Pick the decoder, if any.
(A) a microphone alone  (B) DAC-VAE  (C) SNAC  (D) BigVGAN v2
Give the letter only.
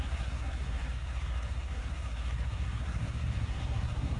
C